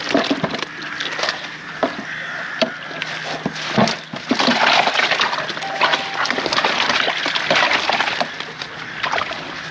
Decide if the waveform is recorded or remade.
recorded